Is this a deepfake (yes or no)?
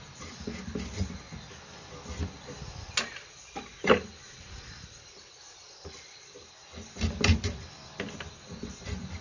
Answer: no